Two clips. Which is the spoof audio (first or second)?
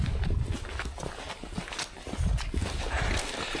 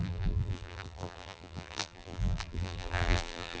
second